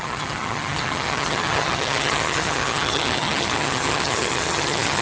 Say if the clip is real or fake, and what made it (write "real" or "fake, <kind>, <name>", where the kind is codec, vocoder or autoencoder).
fake, vocoder, HiFi-GAN